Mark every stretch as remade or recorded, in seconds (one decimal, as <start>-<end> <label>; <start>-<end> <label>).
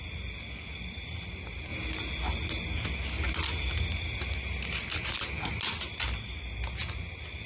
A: 0.0-7.5 recorded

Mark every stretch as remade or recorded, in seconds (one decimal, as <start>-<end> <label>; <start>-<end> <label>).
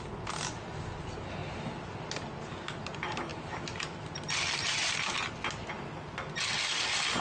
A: 0.0-7.2 recorded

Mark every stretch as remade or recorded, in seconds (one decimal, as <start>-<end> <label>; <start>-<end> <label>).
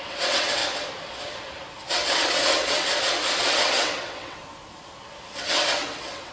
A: 0.0-0.6 remade; 0.6-1.9 recorded; 1.9-2.9 remade; 2.9-3.5 recorded; 3.5-4.4 remade; 4.4-5.3 recorded; 5.3-6.3 remade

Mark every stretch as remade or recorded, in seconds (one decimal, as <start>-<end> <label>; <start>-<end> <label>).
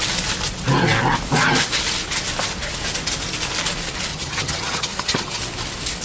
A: 0.0-4.1 recorded; 4.1-5.4 remade; 5.4-6.0 recorded